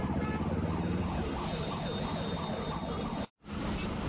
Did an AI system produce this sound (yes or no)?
no